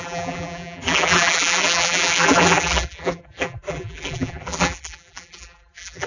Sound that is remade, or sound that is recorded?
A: remade